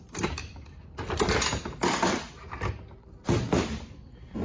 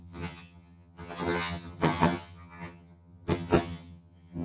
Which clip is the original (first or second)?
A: first